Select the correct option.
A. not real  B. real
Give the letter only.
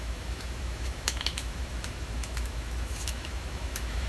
A